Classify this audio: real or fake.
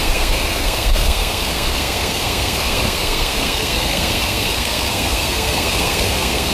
fake